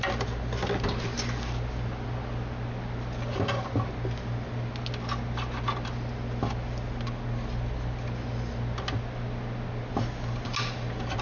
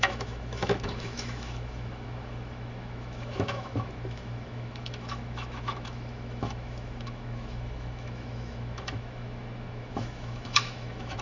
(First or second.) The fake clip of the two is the second